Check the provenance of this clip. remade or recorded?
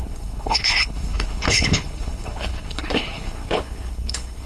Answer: remade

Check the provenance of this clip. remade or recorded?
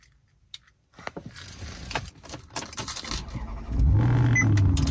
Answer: recorded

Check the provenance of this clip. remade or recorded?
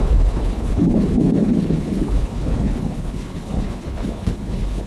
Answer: remade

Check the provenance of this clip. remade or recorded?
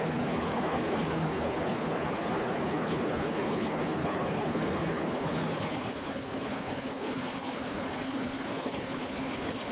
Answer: remade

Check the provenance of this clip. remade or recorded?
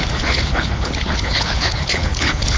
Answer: remade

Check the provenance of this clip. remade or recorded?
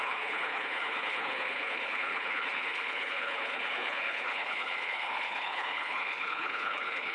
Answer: remade